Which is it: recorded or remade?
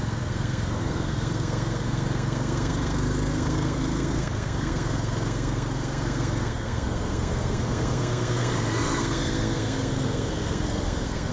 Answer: remade